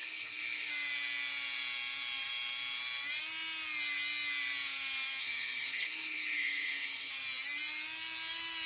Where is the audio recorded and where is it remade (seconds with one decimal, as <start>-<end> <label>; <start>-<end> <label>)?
0.0-0.7 remade; 0.7-5.2 recorded; 5.2-7.1 remade; 7.1-8.7 recorded